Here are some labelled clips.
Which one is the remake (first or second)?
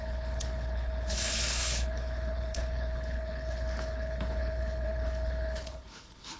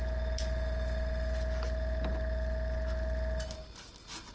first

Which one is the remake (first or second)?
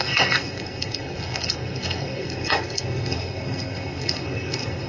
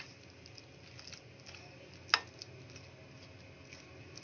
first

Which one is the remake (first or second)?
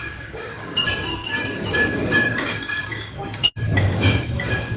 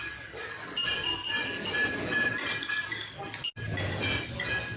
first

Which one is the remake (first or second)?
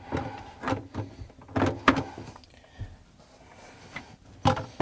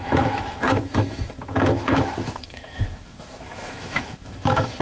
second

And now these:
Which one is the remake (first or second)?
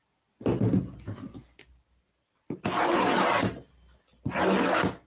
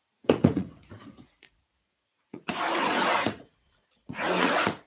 second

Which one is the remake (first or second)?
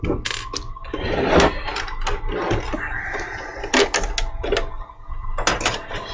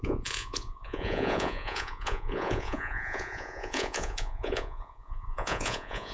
second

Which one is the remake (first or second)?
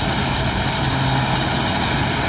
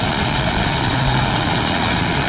second